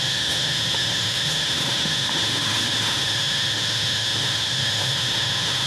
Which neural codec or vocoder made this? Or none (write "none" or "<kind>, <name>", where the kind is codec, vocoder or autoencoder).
autoencoder, DAC-VAE